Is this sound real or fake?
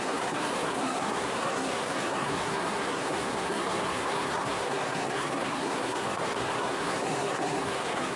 fake